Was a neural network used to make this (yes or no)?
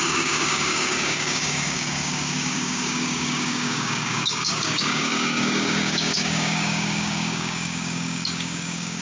yes